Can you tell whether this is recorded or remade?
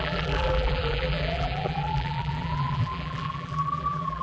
remade